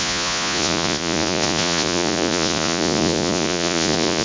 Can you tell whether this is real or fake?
fake